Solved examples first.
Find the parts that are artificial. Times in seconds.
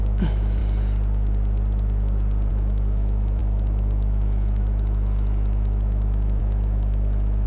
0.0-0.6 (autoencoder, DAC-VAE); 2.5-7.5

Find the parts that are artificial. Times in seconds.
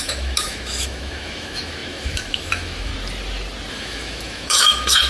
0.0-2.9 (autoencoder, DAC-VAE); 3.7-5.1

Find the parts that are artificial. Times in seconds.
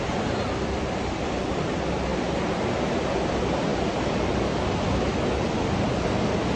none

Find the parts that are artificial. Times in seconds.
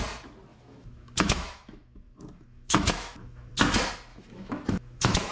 0.5-3.5 (autoencoder, DAC-VAE); 4.1-5.3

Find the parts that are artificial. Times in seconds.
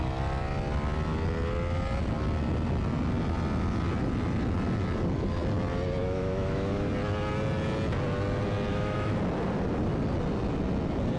6.0-6.9 (autoencoder, DAC-VAE); 8.7-9.2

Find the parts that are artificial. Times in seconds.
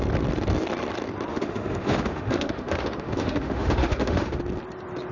1.3-4.4 (autoencoder, DAC-VAE)